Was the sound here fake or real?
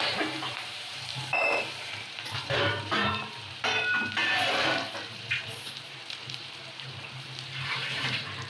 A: fake